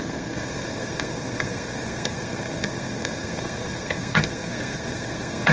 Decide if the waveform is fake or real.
fake